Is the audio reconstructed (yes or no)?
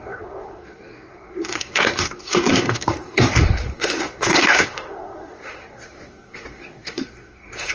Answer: yes